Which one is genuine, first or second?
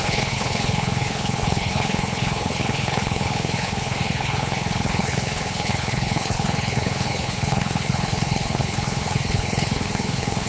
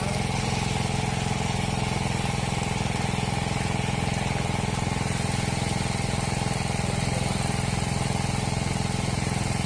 second